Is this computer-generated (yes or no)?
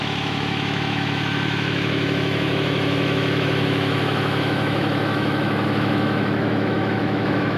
yes